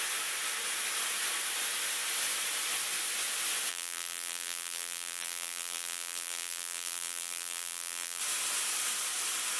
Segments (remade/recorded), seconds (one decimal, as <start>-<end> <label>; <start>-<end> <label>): 0.0-3.7 recorded; 3.7-8.2 remade; 8.2-9.6 recorded